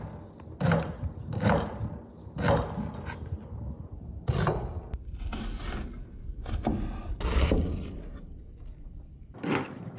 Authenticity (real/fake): real